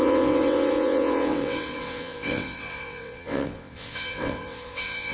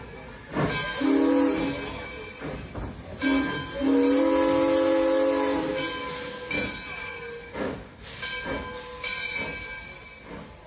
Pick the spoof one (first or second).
first